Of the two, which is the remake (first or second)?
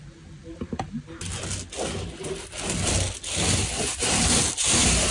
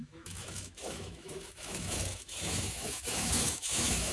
second